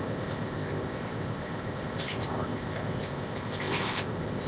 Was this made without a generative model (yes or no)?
no